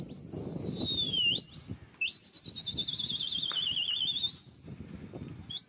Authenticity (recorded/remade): recorded